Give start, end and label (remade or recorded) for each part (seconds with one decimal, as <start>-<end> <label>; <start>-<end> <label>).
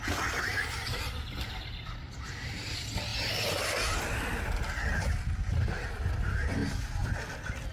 0.0-7.7 recorded